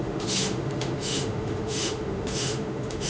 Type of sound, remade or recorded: remade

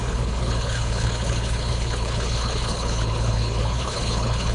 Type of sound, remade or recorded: remade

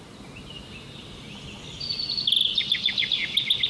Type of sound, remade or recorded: recorded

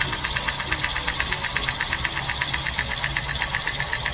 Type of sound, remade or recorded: recorded